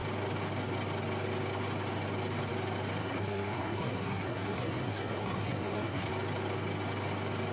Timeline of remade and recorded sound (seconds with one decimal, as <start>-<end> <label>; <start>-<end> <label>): 0.0-3.0 recorded; 3.0-6.1 remade; 6.1-7.5 recorded